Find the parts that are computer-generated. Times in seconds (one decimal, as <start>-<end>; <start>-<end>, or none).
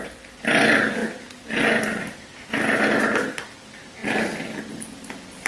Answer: none